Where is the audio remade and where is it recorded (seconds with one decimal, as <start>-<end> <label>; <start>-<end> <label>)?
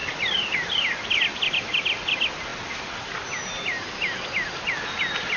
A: 0.0-5.4 recorded